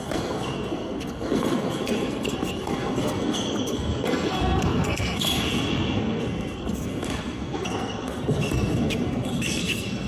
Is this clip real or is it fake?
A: fake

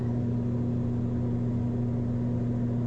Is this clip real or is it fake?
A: fake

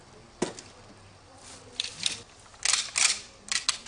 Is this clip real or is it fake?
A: real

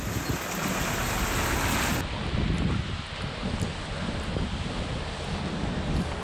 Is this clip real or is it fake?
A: real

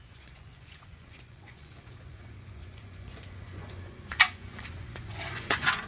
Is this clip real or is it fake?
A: fake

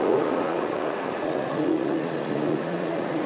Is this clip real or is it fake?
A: fake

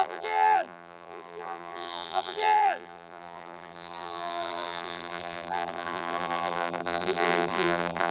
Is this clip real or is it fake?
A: fake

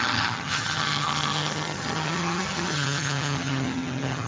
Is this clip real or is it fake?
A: fake